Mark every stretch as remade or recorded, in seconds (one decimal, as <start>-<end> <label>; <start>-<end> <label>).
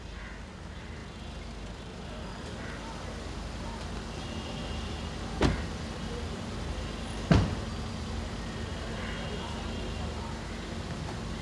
0.0-11.4 recorded